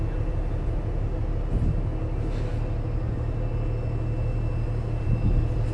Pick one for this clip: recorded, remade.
recorded